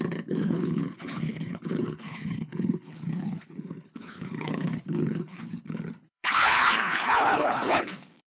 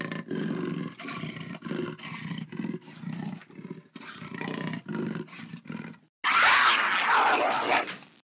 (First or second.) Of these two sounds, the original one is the second